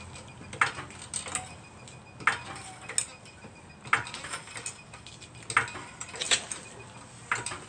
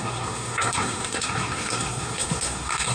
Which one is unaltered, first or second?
first